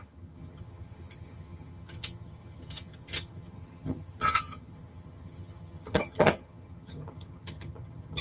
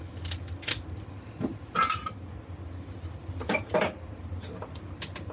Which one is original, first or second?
second